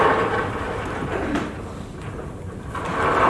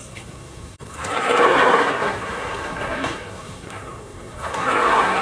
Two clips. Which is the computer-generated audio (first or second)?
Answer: second